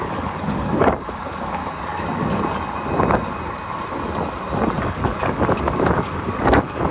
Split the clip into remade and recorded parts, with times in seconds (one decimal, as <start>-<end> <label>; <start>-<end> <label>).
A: 0.0-1.6 remade; 1.6-4.8 recorded; 4.8-6.9 remade

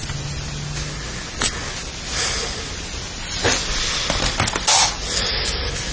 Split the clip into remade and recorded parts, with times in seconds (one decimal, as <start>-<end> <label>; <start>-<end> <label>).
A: 0.0-5.9 recorded

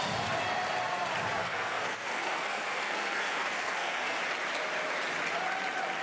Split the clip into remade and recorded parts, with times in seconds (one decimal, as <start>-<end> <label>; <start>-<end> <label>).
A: 0.0-1.4 recorded; 1.4-4.2 remade; 4.2-6.0 recorded

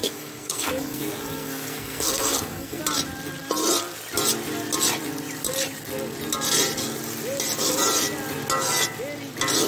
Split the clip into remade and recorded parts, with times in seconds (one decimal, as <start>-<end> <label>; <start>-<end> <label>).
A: 0.0-2.8 remade; 2.8-9.7 recorded

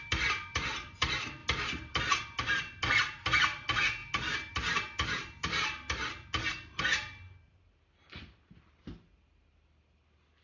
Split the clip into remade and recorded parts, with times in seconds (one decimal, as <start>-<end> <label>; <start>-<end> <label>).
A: 0.0-10.4 recorded